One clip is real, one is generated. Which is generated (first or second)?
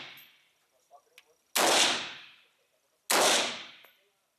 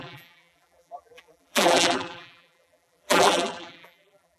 second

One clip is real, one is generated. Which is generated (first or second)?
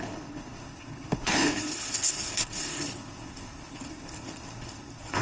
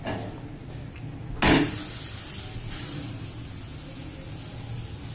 first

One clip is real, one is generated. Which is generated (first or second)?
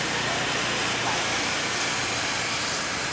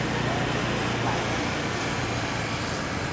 first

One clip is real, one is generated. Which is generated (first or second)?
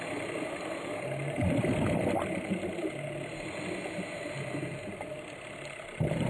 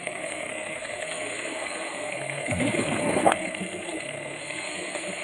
second